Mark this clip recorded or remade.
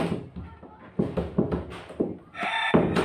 recorded